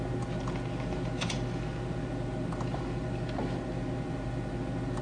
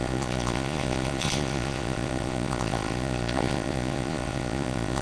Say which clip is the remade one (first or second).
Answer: second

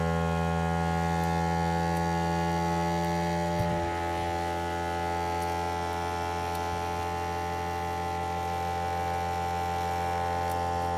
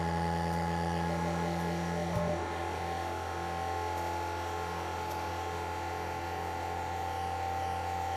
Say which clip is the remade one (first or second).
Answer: second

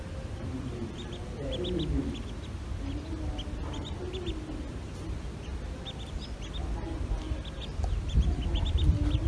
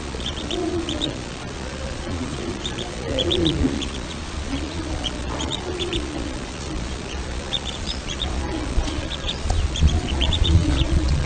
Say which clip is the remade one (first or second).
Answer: second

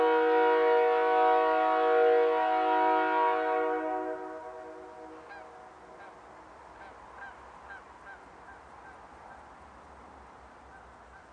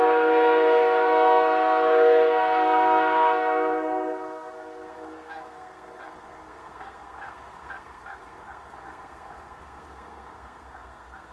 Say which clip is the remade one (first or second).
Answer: second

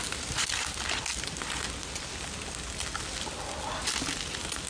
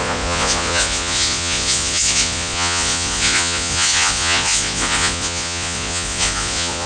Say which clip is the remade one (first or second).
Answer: second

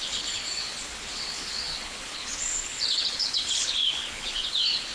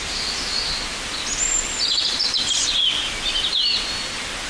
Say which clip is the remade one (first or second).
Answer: first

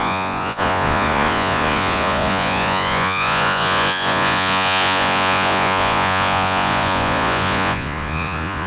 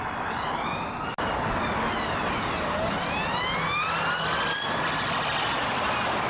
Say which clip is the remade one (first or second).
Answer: first